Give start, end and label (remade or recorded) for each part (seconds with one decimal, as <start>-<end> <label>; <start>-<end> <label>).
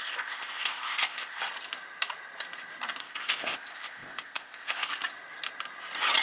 0.0-1.4 remade; 1.4-3.0 recorded; 3.0-4.9 remade; 4.9-6.2 recorded